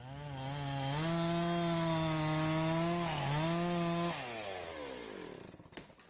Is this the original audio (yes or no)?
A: yes